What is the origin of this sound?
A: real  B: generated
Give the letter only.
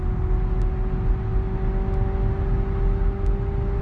A